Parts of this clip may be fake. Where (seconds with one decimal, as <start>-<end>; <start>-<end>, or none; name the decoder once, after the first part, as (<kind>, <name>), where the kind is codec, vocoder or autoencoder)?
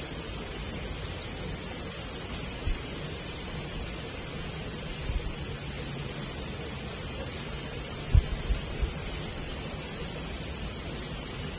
none